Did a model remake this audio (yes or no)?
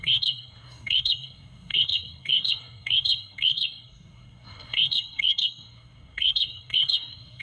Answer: yes